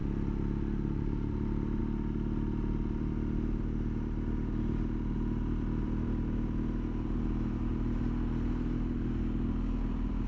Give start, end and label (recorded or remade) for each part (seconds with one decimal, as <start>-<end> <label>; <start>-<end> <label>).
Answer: 0.0-10.3 recorded